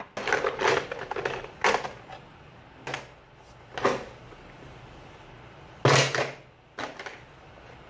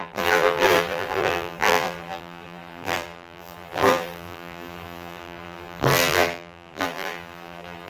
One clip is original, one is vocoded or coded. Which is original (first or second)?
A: first